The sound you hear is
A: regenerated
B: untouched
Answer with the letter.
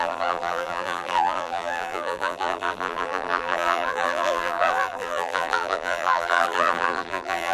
A